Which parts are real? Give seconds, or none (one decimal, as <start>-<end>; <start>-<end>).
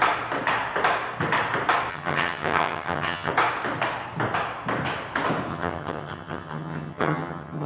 0.0-1.9; 3.3-5.5